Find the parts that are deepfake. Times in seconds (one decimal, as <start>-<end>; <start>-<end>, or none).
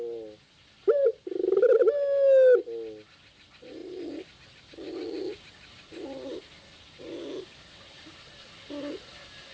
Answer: none